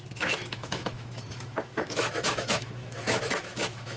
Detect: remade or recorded remade